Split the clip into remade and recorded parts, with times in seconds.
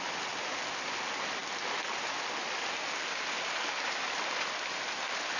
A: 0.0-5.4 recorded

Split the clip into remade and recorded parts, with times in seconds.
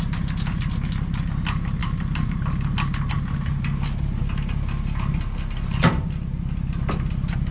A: 0.0-7.5 recorded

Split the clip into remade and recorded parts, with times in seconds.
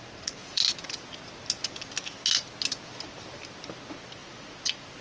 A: 0.0-0.6 remade; 0.6-4.2 recorded; 4.2-5.0 remade